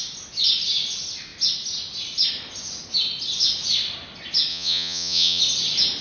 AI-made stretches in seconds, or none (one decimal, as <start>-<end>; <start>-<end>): 4.5-5.4